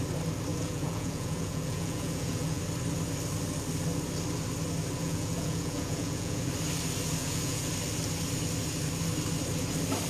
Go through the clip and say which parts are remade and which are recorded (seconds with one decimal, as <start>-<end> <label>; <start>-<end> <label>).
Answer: 0.0-0.5 recorded; 0.5-2.6 remade; 2.6-5.0 recorded; 5.0-6.5 remade; 6.5-7.2 recorded; 7.2-7.7 remade; 7.7-10.1 recorded